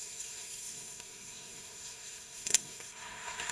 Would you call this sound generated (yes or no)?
yes